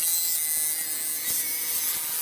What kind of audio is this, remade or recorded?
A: recorded